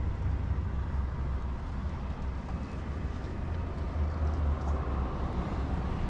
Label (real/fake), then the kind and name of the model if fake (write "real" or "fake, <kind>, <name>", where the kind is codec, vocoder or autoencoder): real